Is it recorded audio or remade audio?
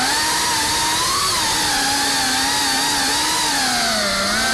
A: recorded